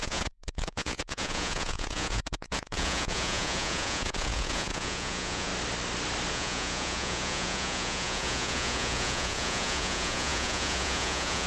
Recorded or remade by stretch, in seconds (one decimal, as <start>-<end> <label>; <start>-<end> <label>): 0.0-5.5 remade; 5.5-6.3 recorded; 6.3-11.5 remade